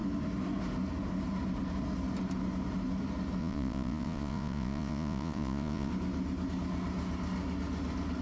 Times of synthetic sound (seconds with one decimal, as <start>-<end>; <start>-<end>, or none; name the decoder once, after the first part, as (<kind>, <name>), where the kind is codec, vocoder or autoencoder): 3.4-5.9 (vocoder, Vocos)